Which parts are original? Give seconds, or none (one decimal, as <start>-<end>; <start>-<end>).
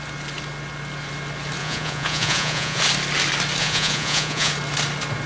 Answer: 0.0-1.6; 2.8-3.6; 4.5-5.3